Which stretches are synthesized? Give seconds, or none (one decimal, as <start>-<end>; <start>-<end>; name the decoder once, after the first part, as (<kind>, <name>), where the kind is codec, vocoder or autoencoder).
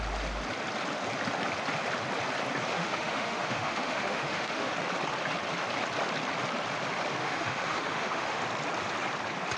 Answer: 2.7-4.7 (autoencoder, DAC-VAE); 7.2-8.4